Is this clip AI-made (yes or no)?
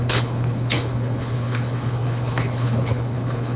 yes